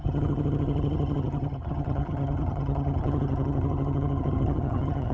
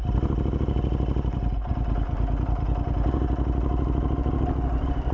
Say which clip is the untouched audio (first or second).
second